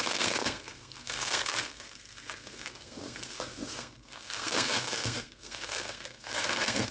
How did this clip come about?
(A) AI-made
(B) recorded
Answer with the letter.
A